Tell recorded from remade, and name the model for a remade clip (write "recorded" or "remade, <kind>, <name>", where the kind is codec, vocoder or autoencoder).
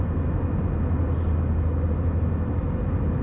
recorded